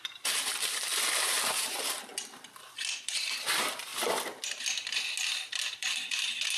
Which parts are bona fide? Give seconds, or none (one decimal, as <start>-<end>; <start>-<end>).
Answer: 0.9-1.5; 2.1-3.0; 3.9-5.5